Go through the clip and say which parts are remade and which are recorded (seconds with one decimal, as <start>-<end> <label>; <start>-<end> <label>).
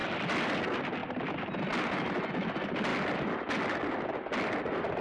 0.0-0.6 remade; 0.6-1.0 recorded; 1.0-2.3 remade; 2.3-2.9 recorded; 2.9-5.0 remade